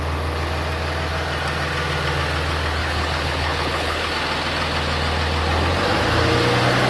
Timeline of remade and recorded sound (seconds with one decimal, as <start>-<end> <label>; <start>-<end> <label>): 0.0-2.8 recorded; 2.8-4.1 remade; 4.1-6.9 recorded